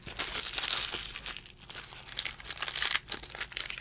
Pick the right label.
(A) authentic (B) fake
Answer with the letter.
A